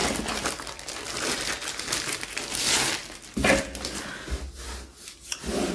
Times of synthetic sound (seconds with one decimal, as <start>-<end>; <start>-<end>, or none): none